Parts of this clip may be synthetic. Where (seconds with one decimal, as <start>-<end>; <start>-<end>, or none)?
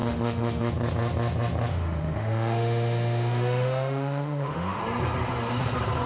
0.0-0.7; 1.7-4.8